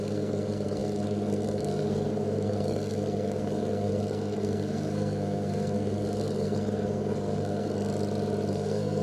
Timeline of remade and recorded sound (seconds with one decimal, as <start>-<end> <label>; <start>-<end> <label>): 0.0-7.9 remade; 7.9-8.5 recorded; 8.5-9.0 remade

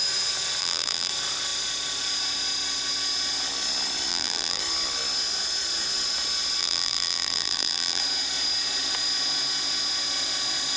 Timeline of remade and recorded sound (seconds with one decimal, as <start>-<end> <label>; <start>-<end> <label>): 0.0-0.6 recorded; 0.6-1.1 remade; 1.1-4.1 recorded; 4.1-4.6 remade; 4.6-6.6 recorded; 6.6-8.0 remade; 8.0-10.8 recorded